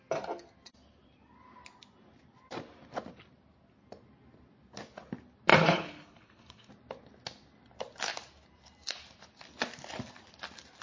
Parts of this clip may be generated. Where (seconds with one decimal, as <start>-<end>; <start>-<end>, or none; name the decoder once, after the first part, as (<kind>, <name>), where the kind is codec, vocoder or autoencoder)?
5.5-6.7 (codec, HILCodec)